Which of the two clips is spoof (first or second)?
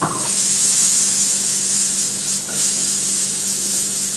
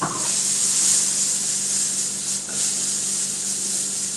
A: first